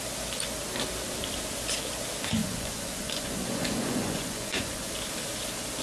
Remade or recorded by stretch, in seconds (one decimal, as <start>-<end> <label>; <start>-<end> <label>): 0.0-2.4 recorded; 2.4-4.9 remade; 4.9-5.8 recorded